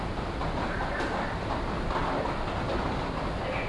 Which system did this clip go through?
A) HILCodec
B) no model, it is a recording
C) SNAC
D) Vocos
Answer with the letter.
B